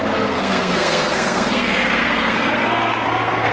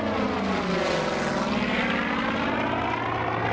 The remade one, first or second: first